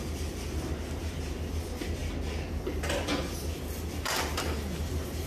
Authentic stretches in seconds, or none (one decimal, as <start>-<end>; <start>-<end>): 0.0-5.3